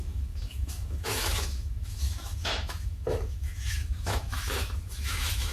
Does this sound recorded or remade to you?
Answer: remade